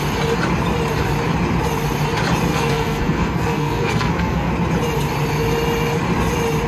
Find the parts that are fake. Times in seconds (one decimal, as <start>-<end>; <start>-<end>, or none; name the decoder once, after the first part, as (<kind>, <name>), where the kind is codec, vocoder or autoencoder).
2.5-4.5 (codec, SNAC)